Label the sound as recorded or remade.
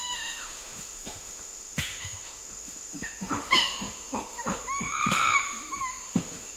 remade